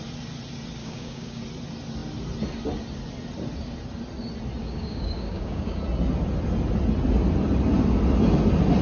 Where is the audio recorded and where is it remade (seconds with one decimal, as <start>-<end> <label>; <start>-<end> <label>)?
0.0-0.8 recorded; 0.8-1.4 remade; 1.4-4.6 recorded; 4.6-5.8 remade; 5.8-8.8 recorded